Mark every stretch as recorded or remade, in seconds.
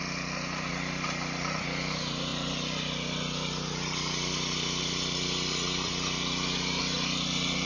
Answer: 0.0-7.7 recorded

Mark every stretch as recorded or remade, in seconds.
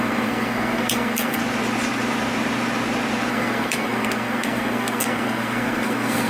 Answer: 0.0-1.4 remade; 1.4-3.3 recorded; 3.3-6.3 remade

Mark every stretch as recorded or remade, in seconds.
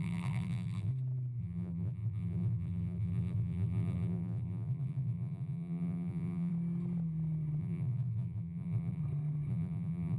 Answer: 0.0-0.9 remade; 0.9-1.4 recorded; 1.4-6.5 remade; 6.5-7.6 recorded; 7.6-9.0 remade; 9.0-9.5 recorded; 9.5-10.2 remade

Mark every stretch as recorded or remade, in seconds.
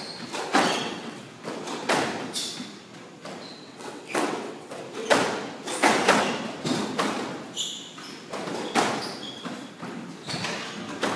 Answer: 0.0-0.5 recorded; 0.5-1.2 remade; 1.2-3.5 recorded; 3.5-4.8 remade; 4.8-11.2 recorded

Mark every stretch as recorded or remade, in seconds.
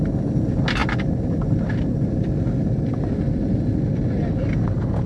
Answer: 0.0-5.1 recorded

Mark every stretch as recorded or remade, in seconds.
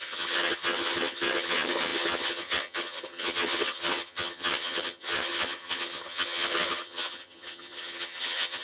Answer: 0.0-8.6 remade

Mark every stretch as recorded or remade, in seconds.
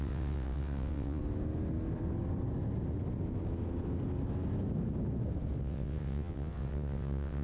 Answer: 0.0-1.2 remade; 1.2-5.6 recorded; 5.6-7.4 remade